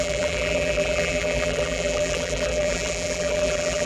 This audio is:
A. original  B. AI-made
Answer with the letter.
B